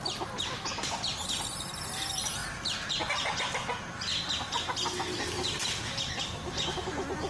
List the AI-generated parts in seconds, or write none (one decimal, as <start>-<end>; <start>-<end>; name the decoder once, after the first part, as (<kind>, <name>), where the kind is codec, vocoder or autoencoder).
none